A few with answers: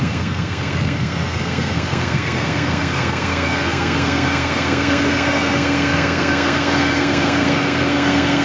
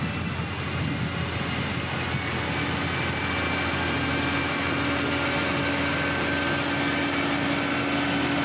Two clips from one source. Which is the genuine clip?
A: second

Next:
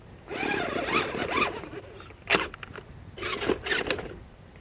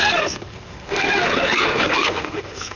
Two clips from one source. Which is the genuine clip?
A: first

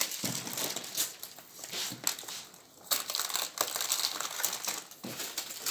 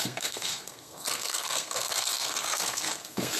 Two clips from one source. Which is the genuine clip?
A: first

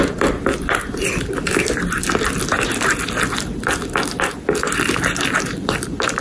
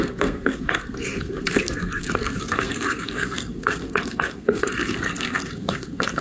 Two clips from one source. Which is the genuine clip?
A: first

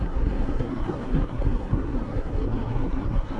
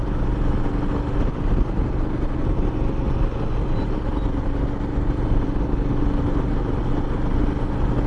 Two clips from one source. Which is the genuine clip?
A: second